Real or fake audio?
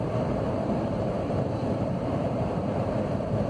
fake